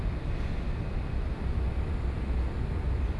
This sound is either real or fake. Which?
real